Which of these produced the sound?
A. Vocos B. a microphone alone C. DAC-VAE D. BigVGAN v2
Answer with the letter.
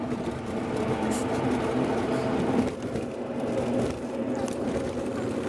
B